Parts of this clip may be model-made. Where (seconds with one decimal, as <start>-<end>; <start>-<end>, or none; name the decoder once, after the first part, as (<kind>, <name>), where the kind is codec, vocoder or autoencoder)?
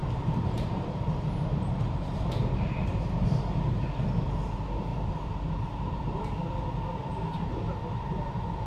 0.0-3.4 (vocoder, BigVGAN v2); 4.9-6.2; 7.1-7.7